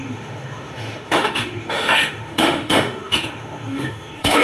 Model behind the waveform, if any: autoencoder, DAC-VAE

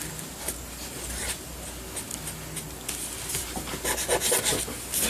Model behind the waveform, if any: none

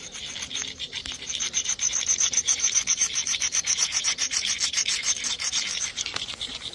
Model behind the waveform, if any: vocoder, BigVGAN v2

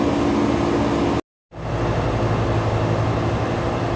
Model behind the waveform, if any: none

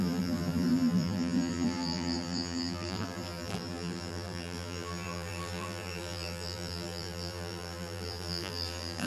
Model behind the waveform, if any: vocoder, BigVGAN v2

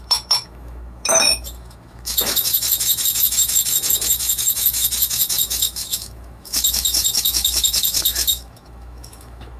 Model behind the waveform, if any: autoencoder, DAC-VAE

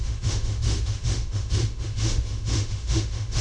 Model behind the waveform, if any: autoencoder, DAC-VAE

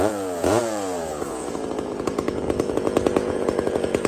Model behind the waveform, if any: vocoder, Vocos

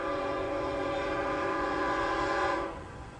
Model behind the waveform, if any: vocoder, Vocos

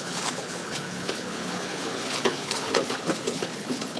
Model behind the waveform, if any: codec, HILCodec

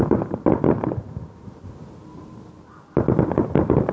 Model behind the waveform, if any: none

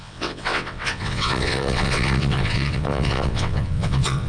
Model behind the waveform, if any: vocoder, WaveNeXt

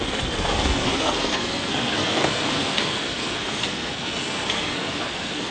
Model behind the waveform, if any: codec, SNAC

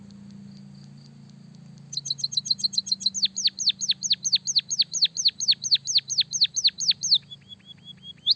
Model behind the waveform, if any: none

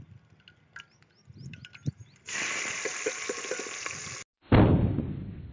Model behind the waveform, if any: none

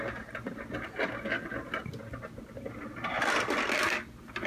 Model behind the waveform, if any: none